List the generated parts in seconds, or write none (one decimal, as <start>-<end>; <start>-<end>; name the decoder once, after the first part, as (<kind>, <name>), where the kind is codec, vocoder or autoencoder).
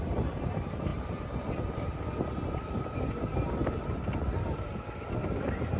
none